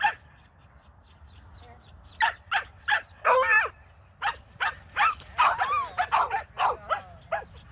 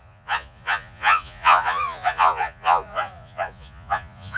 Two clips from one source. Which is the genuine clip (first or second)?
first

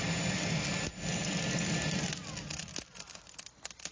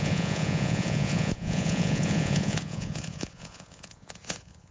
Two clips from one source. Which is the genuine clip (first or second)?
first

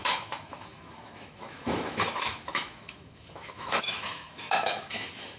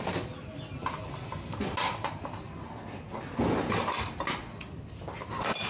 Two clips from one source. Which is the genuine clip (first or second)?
second